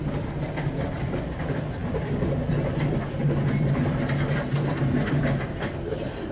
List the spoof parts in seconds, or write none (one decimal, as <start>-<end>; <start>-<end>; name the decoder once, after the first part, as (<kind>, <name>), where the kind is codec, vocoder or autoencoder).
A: none